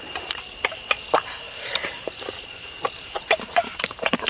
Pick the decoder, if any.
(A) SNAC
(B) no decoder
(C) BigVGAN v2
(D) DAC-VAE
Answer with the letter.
C